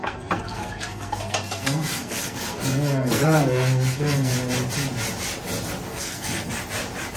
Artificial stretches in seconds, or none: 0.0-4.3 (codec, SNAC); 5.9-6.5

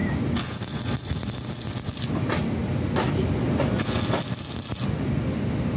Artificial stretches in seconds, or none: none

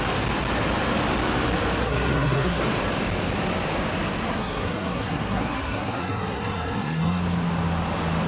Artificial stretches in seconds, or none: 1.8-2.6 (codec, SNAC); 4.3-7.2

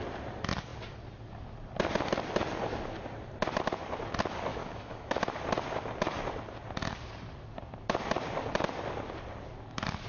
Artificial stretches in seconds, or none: 4.5-5.2 (autoencoder, DAC-VAE)